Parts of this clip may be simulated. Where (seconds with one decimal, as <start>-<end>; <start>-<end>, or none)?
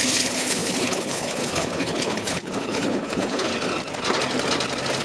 0.0-3.5